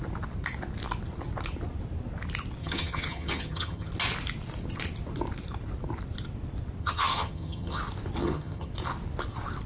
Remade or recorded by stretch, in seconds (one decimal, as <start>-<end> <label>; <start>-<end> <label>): 0.0-2.6 recorded; 2.6-3.9 remade; 3.9-6.8 recorded; 6.8-7.8 remade; 7.8-8.2 recorded; 8.2-8.7 remade; 8.7-9.7 recorded